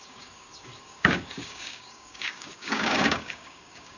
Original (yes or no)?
no